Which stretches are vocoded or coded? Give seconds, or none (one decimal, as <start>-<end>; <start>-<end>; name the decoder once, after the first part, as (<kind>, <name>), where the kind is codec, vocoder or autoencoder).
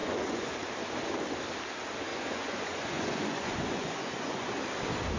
0.0-0.5 (vocoder, Vocos); 2.1-4.5